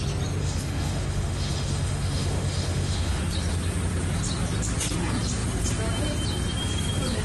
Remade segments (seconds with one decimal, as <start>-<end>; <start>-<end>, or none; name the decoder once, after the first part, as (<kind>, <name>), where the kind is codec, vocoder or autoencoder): 0.4-3.2 (autoencoder, DAC-VAE)